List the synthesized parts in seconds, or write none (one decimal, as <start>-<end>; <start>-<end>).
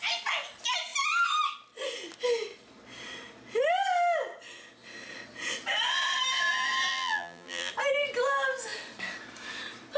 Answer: 6.9-7.7